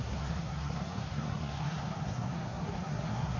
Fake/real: fake